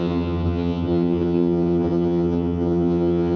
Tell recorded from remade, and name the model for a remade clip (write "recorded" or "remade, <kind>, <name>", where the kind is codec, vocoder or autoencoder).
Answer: remade, vocoder, HiFi-GAN